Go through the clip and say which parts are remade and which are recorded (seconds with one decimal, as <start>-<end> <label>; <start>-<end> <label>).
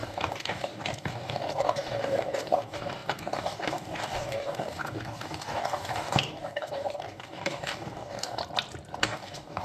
0.0-8.4 remade; 8.4-9.0 recorded; 9.0-9.6 remade